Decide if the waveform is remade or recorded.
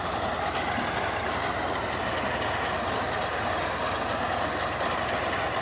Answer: recorded